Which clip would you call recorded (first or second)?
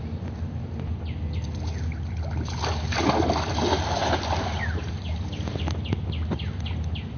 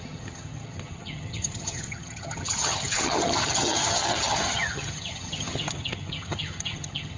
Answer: first